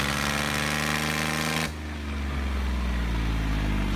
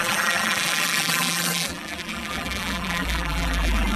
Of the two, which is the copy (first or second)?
second